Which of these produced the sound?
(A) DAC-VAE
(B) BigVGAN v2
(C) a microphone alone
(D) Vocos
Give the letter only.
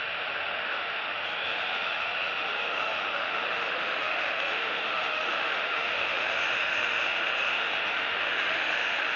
A